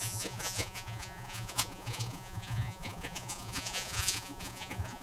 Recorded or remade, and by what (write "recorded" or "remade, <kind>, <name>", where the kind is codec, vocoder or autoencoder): remade, vocoder, Vocos